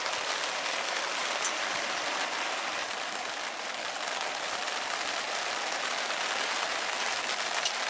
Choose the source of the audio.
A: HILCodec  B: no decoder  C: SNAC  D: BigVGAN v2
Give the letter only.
D